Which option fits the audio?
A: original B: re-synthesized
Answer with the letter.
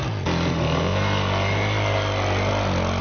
A